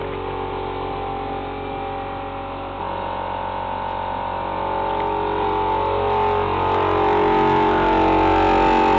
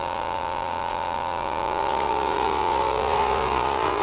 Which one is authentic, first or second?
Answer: first